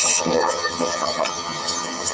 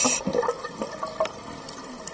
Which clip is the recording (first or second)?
second